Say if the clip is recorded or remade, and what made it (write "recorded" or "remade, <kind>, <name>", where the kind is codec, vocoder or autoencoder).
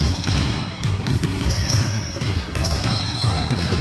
remade, codec, SNAC